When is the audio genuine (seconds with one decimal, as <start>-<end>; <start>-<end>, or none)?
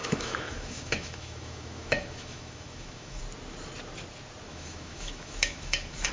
3.2-4.5